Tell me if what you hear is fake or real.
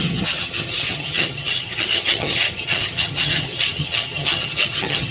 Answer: fake